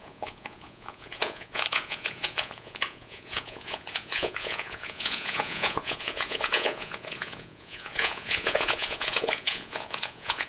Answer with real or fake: fake